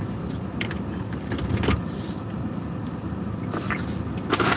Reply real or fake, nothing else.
real